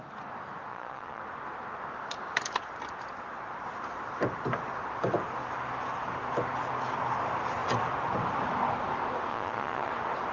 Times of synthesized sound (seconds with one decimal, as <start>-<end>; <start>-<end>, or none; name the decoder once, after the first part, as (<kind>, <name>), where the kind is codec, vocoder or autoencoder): 0.7-1.2 (vocoder, Vocos); 9.3-9.9